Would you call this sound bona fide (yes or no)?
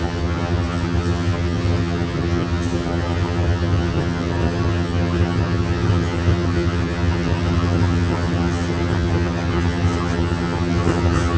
no